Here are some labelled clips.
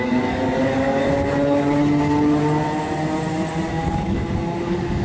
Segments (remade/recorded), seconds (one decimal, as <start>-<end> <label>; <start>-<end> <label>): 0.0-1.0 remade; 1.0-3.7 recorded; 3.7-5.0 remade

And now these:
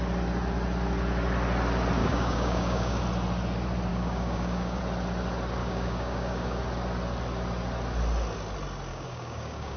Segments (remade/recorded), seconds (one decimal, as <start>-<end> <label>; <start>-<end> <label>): 0.0-2.0 recorded; 2.0-3.0 remade; 3.0-3.9 recorded; 3.9-4.8 remade; 4.8-5.6 recorded; 5.6-6.6 remade; 6.6-8.9 recorded; 8.9-9.8 remade

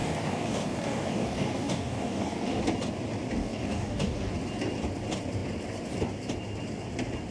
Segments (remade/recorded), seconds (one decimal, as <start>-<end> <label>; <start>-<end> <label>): 0.0-2.6 remade; 2.6-3.4 recorded; 3.4-4.3 remade; 4.3-7.3 recorded